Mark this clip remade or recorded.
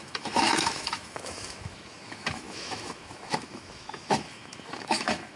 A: remade